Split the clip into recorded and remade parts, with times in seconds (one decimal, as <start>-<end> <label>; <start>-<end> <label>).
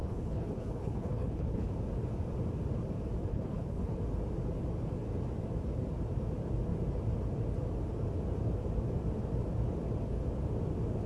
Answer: 0.0-1.7 remade; 1.7-3.3 recorded; 3.3-3.9 remade; 3.9-11.1 recorded